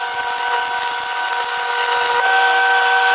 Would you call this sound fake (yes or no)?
no